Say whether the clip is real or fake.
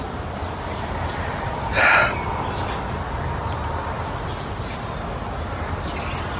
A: real